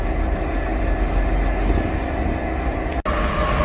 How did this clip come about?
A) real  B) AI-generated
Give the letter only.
A